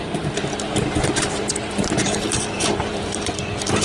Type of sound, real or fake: fake